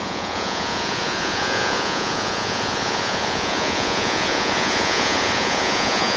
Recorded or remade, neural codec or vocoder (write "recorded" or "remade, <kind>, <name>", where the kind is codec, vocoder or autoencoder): remade, vocoder, Vocos